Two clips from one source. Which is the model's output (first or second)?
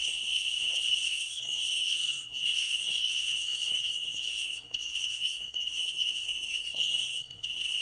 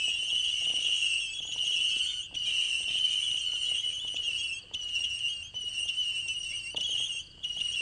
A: first